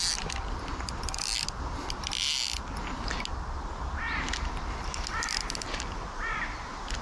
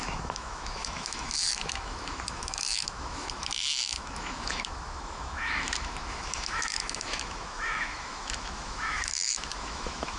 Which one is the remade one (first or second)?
second